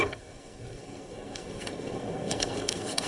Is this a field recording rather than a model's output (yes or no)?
no